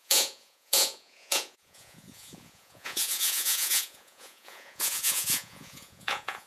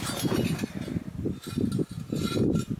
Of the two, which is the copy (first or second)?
first